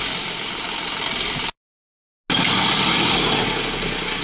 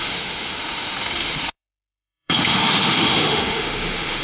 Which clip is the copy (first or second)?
second